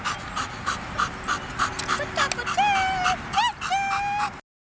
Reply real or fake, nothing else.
real